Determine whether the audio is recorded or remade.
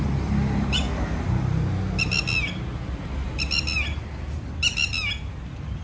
recorded